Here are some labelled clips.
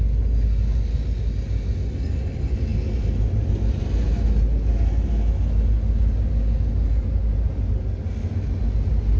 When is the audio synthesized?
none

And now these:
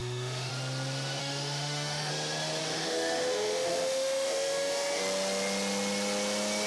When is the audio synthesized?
0.0-0.5 (autoencoder, DAC-VAE); 1.2-2.1; 2.6-5.0

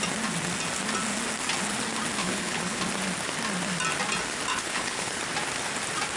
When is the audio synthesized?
2.2-2.8 (codec, HILCodec); 4.5-5.2

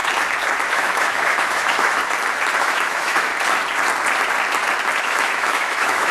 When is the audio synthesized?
0.7-2.0 (autoencoder, DAC-VAE); 2.6-3.3; 5.0-6.1

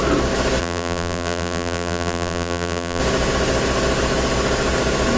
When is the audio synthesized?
0.6-3.0 (vocoder, BigVGAN v2)

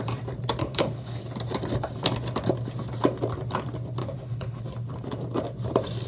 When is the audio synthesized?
0.6-1.2 (codec, HILCodec); 4.0-4.6

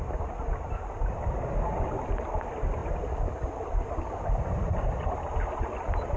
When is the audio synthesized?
none

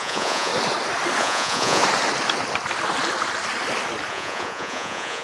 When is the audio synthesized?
0.0-0.5 (vocoder, Vocos); 1.2-1.8; 4.1-5.2